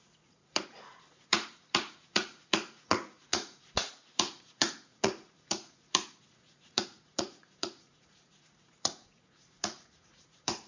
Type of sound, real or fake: fake